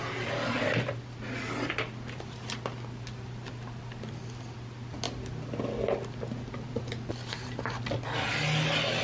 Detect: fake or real real